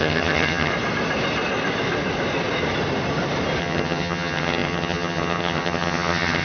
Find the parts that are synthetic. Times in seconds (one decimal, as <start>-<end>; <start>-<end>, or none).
0.0-0.7; 3.6-6.4